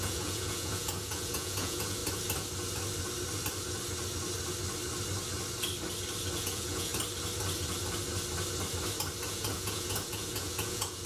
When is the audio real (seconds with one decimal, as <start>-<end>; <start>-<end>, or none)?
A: 2.0-6.4; 6.9-9.3